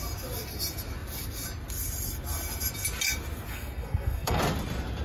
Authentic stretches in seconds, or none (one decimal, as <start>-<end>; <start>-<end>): 0.0-3.5; 4.4-5.0